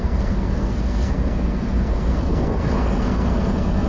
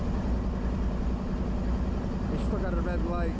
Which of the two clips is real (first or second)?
second